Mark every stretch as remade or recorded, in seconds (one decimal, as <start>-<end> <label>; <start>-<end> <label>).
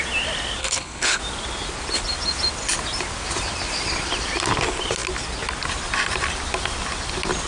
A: 0.0-0.6 recorded; 0.6-1.2 remade; 1.2-7.5 recorded